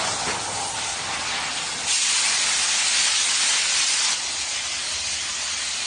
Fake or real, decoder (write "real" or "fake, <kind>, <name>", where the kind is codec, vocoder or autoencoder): real